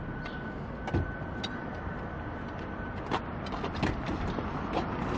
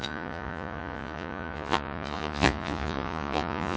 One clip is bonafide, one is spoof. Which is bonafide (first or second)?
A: first